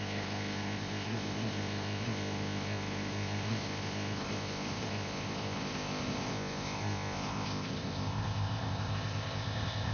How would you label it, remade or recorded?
remade